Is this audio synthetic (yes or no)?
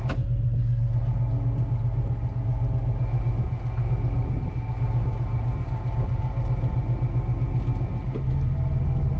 no